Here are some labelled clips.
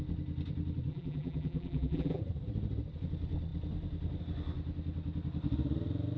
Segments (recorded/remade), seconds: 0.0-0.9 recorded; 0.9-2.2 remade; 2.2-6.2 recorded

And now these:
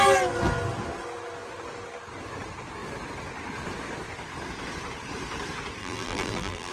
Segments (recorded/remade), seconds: 0.0-5.8 recorded; 5.8-6.7 remade

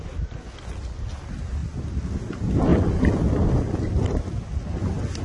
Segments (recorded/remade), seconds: 0.0-2.7 recorded; 2.7-4.3 remade; 4.3-5.2 recorded

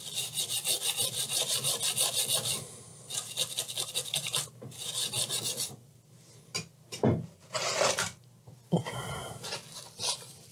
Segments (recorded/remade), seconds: 0.0-10.5 recorded

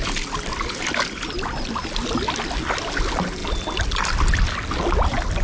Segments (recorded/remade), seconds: 0.0-5.4 recorded

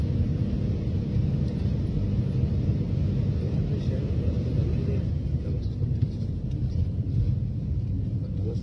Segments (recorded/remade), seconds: 0.0-4.5 remade; 4.5-5.2 recorded; 5.2-8.6 remade

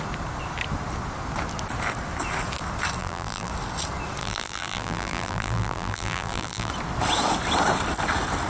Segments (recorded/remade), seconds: 0.0-3.0 recorded; 3.0-3.5 remade; 3.5-4.2 recorded; 4.2-6.7 remade; 6.7-8.5 recorded

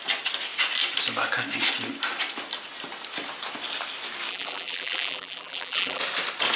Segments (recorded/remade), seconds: 0.0-4.3 recorded; 4.3-6.0 remade; 6.0-6.6 recorded